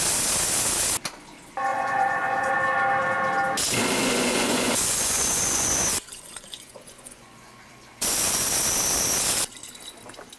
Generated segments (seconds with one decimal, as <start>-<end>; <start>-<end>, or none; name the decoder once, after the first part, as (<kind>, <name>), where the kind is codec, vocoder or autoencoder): 1.7-2.5 (vocoder, Vocos); 4.0-8.5